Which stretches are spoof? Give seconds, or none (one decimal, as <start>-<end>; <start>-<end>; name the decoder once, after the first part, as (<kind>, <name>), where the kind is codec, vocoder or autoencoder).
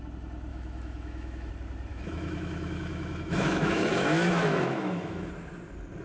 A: 0.5-1.5 (autoencoder, DAC-VAE); 1.9-5.3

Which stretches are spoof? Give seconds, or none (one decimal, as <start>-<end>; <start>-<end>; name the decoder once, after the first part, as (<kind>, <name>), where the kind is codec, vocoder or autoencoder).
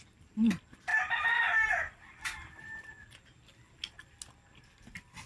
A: none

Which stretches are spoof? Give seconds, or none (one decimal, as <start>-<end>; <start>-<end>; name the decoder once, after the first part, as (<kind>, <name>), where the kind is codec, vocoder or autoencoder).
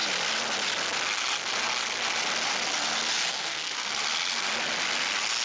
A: 3.3-3.9 (codec, SNAC)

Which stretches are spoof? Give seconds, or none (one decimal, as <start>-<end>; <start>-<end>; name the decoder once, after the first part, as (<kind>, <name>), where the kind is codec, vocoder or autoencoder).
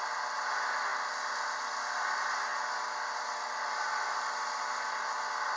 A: none